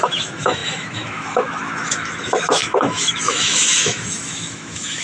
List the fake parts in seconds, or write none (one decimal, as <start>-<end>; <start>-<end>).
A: 0.0-5.0